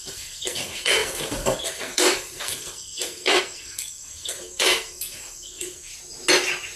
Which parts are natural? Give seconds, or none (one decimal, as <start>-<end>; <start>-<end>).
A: 5.9-6.8